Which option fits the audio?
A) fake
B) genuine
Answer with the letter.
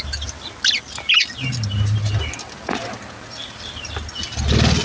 B